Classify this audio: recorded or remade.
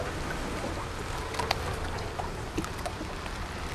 recorded